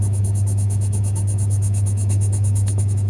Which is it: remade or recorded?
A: remade